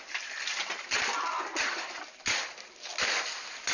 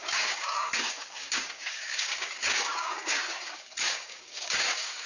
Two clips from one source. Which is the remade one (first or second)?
second